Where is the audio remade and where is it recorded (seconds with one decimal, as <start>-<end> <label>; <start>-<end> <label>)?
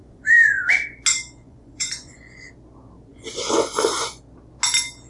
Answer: 0.0-0.7 remade; 0.7-1.4 recorded; 1.4-2.5 remade; 2.5-3.1 recorded; 3.1-4.2 remade; 4.2-5.1 recorded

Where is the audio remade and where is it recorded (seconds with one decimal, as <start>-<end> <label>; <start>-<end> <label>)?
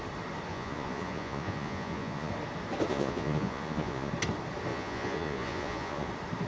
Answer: 0.0-0.5 recorded; 0.5-2.3 remade; 2.3-2.9 recorded; 2.9-4.1 remade; 4.1-4.7 recorded; 4.7-6.1 remade; 6.1-6.5 recorded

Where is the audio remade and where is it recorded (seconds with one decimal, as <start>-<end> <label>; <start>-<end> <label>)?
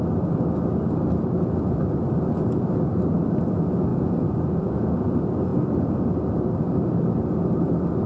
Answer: 0.0-3.9 recorded; 3.9-5.1 remade; 5.1-8.1 recorded